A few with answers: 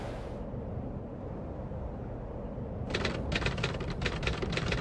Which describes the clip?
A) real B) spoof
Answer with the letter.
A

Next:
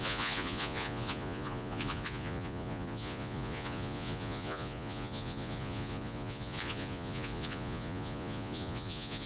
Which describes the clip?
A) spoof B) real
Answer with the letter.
A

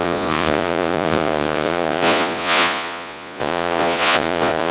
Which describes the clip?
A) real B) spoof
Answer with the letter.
B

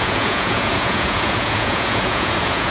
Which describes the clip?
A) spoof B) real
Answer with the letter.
A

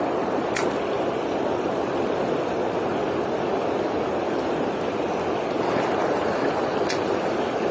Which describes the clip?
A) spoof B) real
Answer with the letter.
B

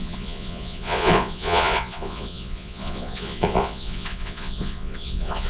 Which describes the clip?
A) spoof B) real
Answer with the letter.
A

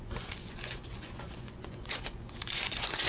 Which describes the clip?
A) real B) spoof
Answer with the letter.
B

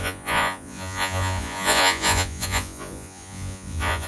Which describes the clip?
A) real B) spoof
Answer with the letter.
B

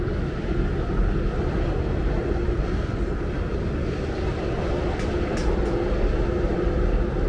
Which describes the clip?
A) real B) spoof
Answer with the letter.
A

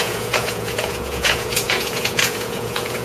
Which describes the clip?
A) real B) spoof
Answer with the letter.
B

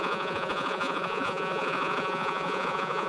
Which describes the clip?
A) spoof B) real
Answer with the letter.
A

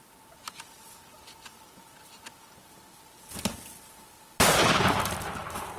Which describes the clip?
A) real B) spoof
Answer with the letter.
A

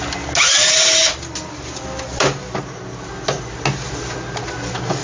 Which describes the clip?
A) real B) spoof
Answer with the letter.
A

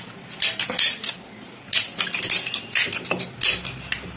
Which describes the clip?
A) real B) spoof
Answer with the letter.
A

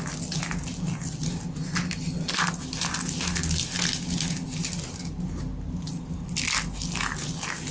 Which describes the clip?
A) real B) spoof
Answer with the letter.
A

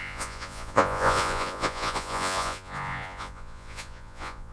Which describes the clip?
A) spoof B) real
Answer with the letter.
A